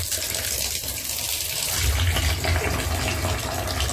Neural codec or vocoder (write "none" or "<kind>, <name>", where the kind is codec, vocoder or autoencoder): none